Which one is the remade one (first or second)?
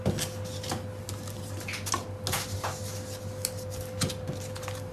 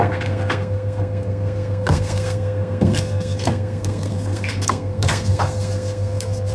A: second